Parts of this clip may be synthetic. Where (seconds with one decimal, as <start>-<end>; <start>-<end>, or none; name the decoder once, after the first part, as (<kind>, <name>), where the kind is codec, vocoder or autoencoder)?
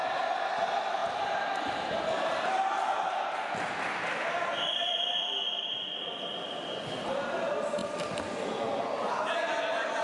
0.0-10.0 (vocoder, BigVGAN v2)